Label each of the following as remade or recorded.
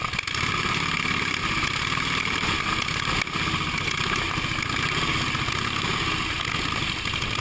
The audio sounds recorded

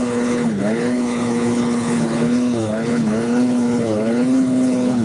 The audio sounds remade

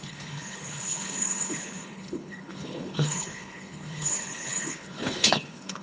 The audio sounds remade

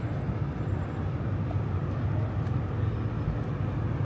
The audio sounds recorded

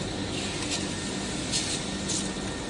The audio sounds recorded